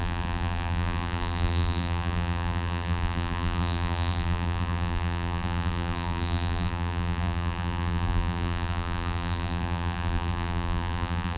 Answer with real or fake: fake